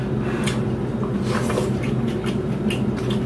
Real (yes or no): yes